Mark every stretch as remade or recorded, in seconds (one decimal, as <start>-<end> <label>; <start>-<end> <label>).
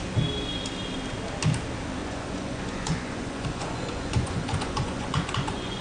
0.0-2.0 recorded; 2.0-5.8 remade